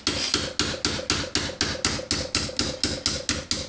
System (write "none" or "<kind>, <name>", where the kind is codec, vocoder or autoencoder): none